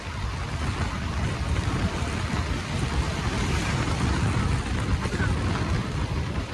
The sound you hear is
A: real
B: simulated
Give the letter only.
A